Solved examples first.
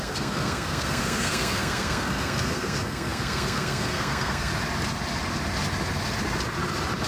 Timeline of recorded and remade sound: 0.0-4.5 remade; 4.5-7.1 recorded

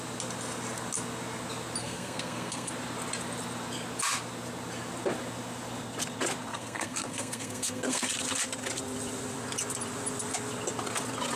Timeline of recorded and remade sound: 0.0-1.8 recorded; 1.8-2.7 remade; 2.7-6.5 recorded; 6.5-8.1 remade; 8.1-11.4 recorded

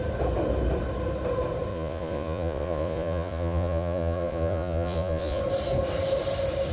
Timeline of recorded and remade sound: 0.0-1.7 recorded; 1.7-5.4 remade; 5.4-6.7 recorded

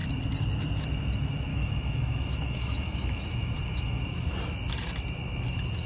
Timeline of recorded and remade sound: 0.0-1.5 recorded; 1.5-4.0 remade; 4.0-5.9 recorded

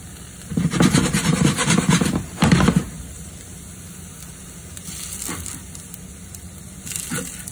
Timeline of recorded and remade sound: 0.0-0.5 recorded; 0.5-3.3 remade; 3.3-7.5 recorded

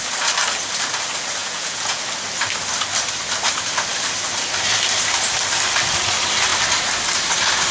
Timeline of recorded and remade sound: 0.0-1.4 recorded; 1.4-2.0 remade; 2.0-7.7 recorded

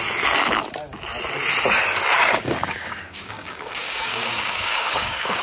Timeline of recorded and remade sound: 0.0-2.2 recorded; 2.2-5.4 remade

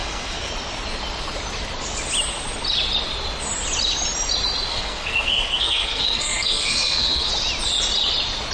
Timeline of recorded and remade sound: 0.0-0.5 remade; 0.5-4.7 recorded; 4.7-7.3 remade; 7.3-8.5 recorded